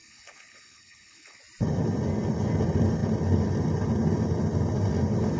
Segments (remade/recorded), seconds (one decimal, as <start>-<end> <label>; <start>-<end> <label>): 0.0-1.4 remade; 1.4-5.4 recorded

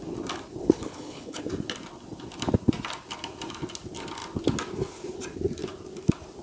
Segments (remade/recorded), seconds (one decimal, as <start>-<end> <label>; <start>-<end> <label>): 0.0-0.6 recorded; 0.6-1.4 remade; 1.4-6.4 recorded

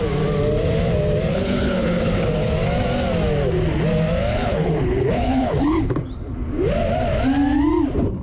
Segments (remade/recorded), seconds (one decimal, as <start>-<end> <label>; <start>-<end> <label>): 0.0-1.3 recorded; 1.3-2.5 remade; 2.5-4.3 recorded; 4.3-5.9 remade; 5.9-8.2 recorded

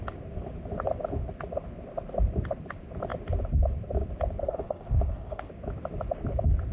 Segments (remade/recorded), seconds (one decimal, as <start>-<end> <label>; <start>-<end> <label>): 0.0-4.4 recorded; 4.4-5.5 remade; 5.5-6.7 recorded

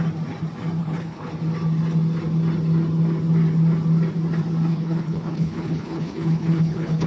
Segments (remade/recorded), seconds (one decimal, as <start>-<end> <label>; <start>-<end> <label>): 0.0-0.8 recorded; 0.8-1.3 remade; 1.3-4.7 recorded; 4.7-7.1 remade

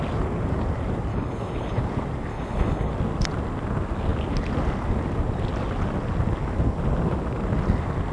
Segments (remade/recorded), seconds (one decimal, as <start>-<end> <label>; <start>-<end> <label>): 0.0-1.1 recorded; 1.1-1.8 remade; 1.8-2.3 recorded; 2.3-2.9 remade; 2.9-8.1 recorded

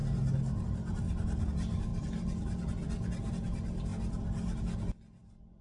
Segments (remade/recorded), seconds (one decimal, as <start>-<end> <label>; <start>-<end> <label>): 0.0-5.6 recorded

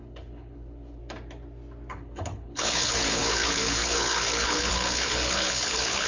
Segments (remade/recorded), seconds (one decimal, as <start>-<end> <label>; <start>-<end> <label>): 0.0-1.0 remade; 1.0-1.9 recorded; 1.9-6.1 remade